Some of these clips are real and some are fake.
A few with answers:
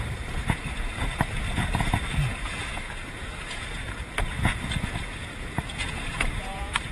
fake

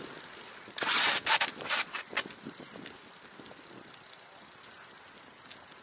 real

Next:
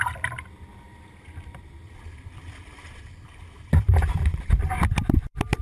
fake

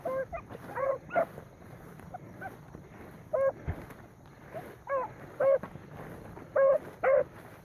real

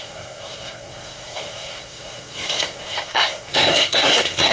fake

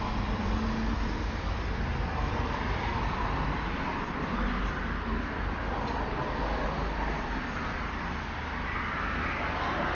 real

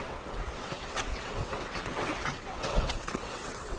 fake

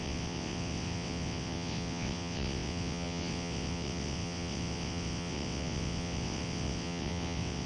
fake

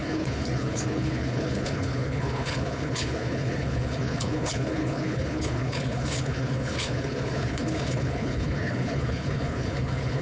fake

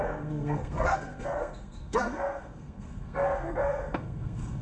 fake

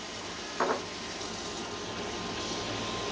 real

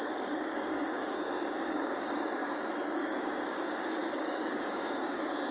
fake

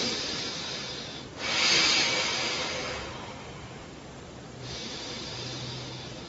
real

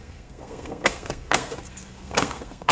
fake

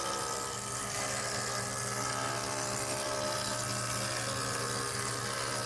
real